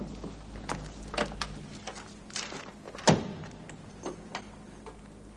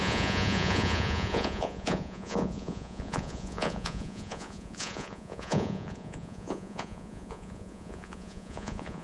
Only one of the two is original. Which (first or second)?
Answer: first